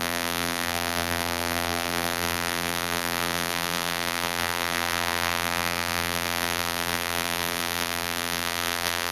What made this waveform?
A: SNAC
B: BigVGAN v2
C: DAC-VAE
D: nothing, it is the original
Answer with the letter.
B